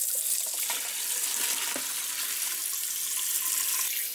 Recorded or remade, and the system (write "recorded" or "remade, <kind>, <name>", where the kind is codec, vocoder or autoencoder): recorded